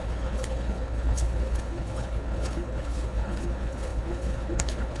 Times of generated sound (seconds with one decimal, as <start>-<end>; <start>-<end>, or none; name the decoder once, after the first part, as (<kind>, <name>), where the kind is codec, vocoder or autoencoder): 0.0-5.0 (codec, HILCodec)

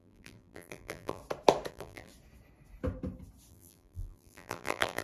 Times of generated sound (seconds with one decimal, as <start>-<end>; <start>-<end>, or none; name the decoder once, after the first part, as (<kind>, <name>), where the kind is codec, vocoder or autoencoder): 0.0-1.2 (vocoder, BigVGAN v2); 1.7-2.1; 3.5-5.0